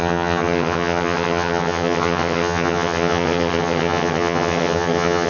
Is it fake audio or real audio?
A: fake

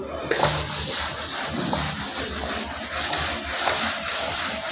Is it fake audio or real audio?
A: real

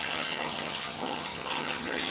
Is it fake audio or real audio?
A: fake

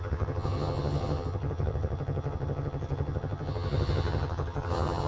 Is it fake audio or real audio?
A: fake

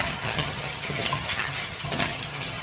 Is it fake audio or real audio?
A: fake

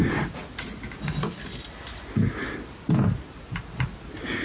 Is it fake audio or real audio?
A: real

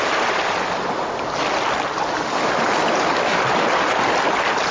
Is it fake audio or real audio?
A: real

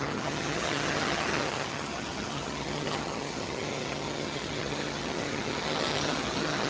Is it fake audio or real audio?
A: fake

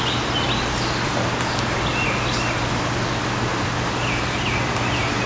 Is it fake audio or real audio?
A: real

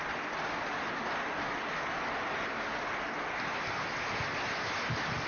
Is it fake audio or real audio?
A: real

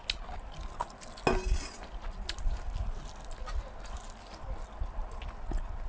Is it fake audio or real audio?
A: real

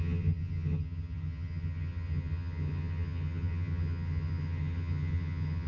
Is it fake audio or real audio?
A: fake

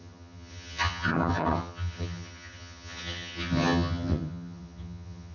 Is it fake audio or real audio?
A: fake